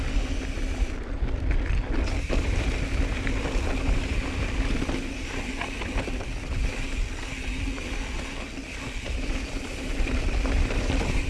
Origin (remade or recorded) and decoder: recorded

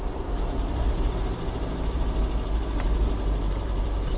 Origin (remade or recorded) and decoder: remade, vocoder, BigVGAN v2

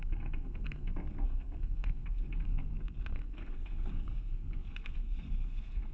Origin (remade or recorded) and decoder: remade, codec, SNAC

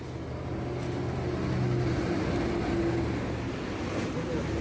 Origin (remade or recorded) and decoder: recorded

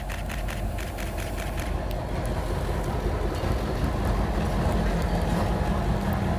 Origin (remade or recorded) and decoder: recorded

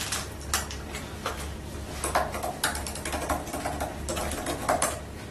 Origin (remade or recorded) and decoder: recorded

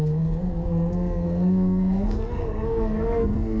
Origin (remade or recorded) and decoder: remade, codec, SNAC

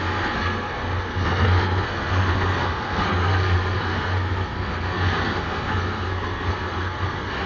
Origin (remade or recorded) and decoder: remade, codec, SNAC